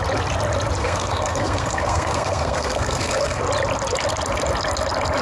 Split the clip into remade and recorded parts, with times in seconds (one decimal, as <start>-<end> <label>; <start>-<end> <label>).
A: 0.0-0.8 recorded; 0.8-3.4 remade; 3.4-5.2 recorded